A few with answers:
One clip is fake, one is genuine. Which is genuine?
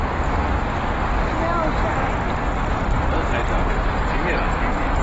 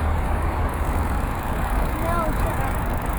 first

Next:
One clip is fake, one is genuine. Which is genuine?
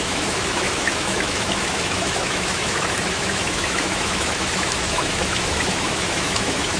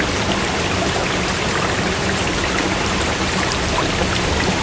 second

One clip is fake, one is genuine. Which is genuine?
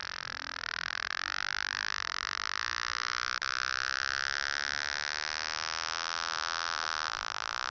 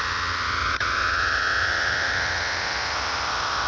first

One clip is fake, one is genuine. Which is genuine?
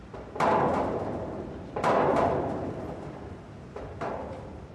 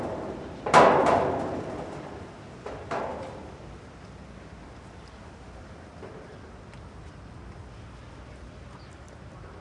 second